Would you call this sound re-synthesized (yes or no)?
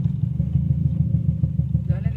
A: no